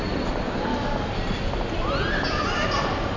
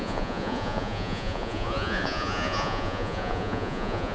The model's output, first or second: second